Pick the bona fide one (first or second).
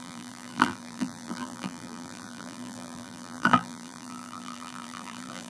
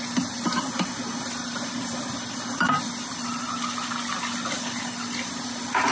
second